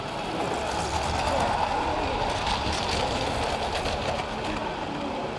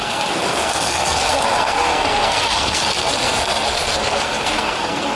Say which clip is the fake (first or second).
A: second